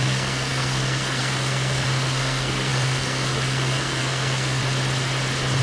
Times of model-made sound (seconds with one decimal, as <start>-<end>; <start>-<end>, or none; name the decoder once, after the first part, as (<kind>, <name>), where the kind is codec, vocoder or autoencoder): 0.0-4.6 (codec, SNAC)